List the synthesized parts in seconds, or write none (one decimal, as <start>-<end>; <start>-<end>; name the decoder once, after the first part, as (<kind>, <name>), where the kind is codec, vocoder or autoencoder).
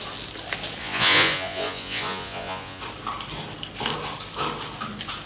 0.8-2.8 (vocoder, Vocos)